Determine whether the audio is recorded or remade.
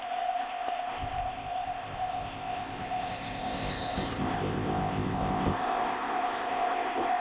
remade